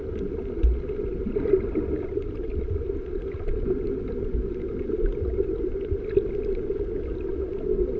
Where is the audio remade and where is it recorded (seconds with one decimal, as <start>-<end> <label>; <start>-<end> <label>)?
0.0-8.0 recorded

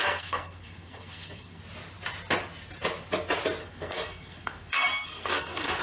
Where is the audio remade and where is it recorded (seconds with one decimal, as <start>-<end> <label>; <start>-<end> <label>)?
0.0-1.6 remade; 1.6-3.6 recorded; 3.6-5.8 remade

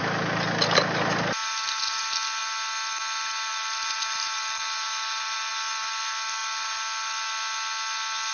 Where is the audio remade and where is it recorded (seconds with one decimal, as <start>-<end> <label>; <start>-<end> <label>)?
0.0-1.4 recorded; 1.4-2.0 remade; 2.0-3.5 recorded; 3.5-5.5 remade; 5.5-8.3 recorded

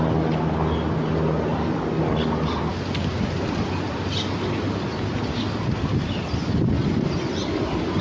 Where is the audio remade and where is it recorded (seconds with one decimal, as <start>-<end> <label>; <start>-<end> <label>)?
0.0-8.0 recorded